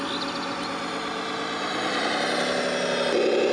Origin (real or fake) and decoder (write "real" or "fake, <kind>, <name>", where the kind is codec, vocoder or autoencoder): real